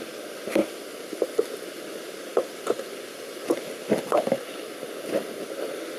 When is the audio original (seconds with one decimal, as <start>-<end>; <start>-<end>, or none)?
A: 0.0-6.0